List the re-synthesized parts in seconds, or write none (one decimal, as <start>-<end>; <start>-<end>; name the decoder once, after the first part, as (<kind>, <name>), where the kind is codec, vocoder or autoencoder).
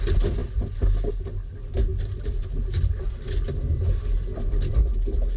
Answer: none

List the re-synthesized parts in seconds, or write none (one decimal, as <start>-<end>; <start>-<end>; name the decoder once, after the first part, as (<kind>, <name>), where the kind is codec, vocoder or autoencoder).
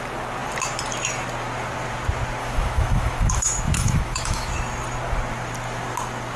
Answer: 2.4-4.5 (autoencoder, DAC-VAE)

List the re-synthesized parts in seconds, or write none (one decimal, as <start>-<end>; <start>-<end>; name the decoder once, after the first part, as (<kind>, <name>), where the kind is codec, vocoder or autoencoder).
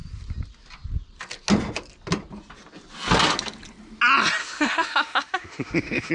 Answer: 4.4-6.1 (autoencoder, DAC-VAE)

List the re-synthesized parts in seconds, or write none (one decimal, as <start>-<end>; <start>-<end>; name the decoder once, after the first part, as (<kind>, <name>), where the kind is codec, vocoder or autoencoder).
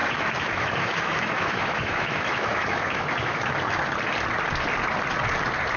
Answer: 0.0-3.5 (autoencoder, DAC-VAE)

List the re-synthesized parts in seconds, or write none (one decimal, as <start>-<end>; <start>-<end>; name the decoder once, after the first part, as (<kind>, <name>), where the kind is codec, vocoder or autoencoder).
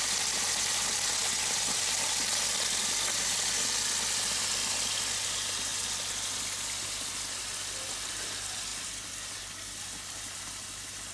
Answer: none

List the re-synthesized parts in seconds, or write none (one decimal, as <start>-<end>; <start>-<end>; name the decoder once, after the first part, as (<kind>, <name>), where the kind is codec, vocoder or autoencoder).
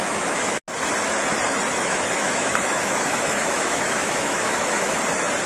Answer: 0.0-0.6 (autoencoder, DAC-VAE); 1.7-5.0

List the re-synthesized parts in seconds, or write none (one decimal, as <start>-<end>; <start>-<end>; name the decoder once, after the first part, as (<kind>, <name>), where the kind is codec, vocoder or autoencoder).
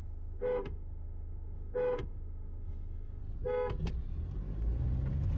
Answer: 0.0-3.2 (autoencoder, DAC-VAE)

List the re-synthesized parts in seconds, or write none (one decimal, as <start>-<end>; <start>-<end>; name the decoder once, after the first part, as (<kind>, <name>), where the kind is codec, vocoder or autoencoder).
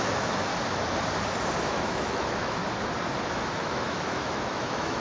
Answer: 0.0-0.5 (autoencoder, DAC-VAE); 1.6-2.6; 3.3-5.0